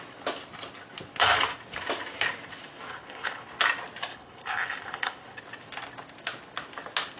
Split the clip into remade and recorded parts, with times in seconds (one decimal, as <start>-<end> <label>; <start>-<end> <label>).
0.0-2.9 recorded; 2.9-3.5 remade; 3.5-4.1 recorded; 4.1-5.4 remade; 5.4-7.2 recorded